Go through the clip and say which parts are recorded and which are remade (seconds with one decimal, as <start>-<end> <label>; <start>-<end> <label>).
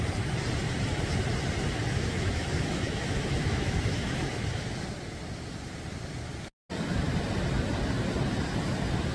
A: 0.0-1.8 recorded; 1.8-4.8 remade; 4.8-9.1 recorded